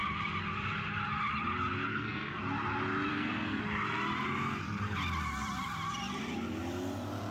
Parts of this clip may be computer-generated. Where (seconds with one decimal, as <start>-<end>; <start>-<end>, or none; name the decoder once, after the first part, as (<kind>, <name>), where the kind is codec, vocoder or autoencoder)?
1.9-2.4 (codec, SNAC); 3.1-3.6